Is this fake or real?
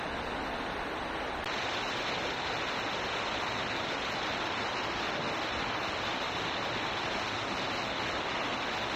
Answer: real